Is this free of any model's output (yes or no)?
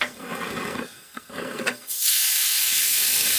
no